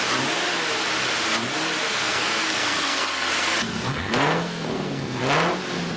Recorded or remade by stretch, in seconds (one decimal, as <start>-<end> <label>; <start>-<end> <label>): 0.0-1.8 recorded; 1.8-5.2 remade; 5.2-6.0 recorded